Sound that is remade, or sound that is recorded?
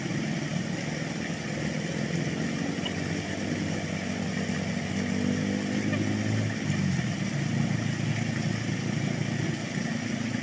recorded